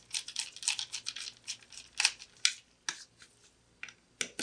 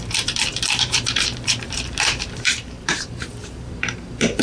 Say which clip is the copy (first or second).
second